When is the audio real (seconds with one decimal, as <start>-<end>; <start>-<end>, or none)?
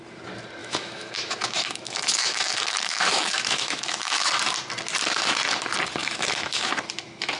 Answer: 0.0-0.6; 4.3-6.0; 6.7-7.4